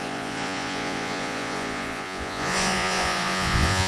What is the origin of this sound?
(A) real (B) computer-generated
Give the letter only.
B